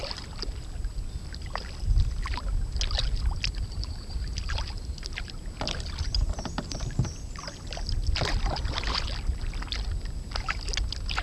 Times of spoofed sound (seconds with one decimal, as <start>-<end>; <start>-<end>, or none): none